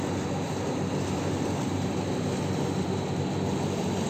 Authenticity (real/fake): real